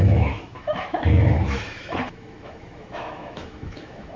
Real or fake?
fake